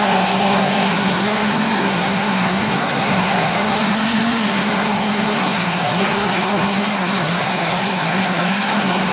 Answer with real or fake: fake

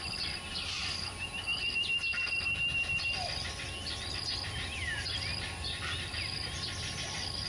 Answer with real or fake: real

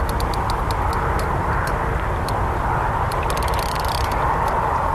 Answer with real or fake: real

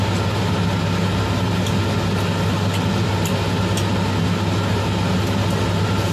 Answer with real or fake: real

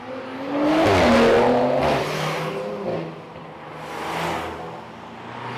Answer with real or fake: real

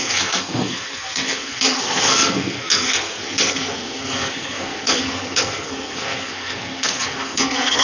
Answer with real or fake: fake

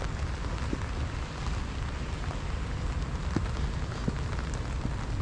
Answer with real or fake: real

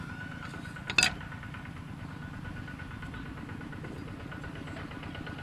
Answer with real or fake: real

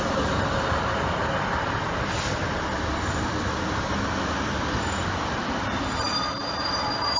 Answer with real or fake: real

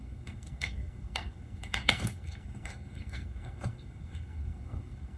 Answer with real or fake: fake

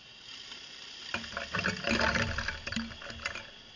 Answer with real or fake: real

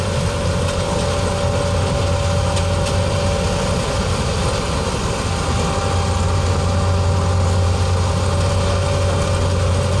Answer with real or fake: real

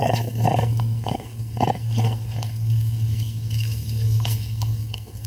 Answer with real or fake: fake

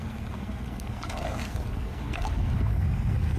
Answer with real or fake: fake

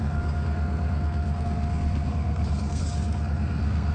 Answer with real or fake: fake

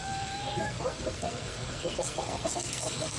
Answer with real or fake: fake